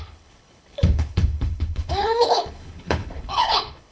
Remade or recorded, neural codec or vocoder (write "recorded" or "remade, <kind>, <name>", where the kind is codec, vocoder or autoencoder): remade, codec, HILCodec